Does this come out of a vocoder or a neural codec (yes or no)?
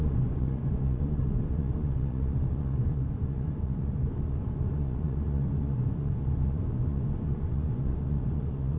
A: yes